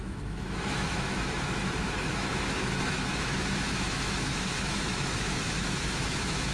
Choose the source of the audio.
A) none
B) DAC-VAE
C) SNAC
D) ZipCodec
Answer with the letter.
B